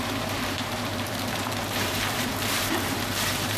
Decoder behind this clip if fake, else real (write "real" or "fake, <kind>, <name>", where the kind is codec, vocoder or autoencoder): fake, vocoder, BigVGAN v2